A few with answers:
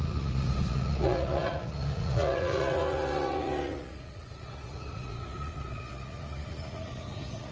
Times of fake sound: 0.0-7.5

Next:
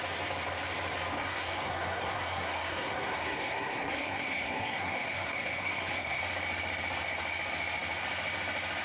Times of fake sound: 1.2-6.2